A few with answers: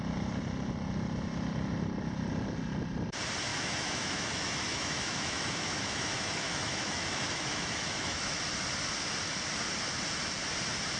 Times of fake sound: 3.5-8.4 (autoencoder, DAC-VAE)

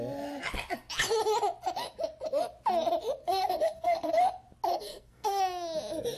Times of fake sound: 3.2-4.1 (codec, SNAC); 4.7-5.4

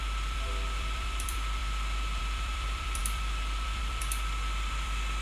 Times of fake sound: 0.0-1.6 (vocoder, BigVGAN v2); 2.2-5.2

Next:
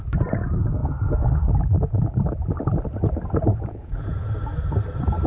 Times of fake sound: 3.5-4.3 (vocoder, Vocos)

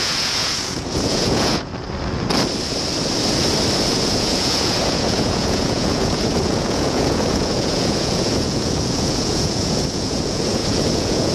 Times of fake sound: 0.0-1.7 (vocoder, Vocos); 3.9-11.3

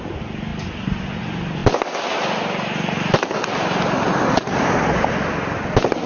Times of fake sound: none

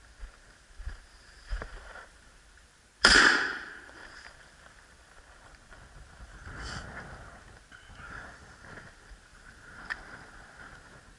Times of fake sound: 0.8-5.2 (vocoder, BigVGAN v2); 9.3-9.8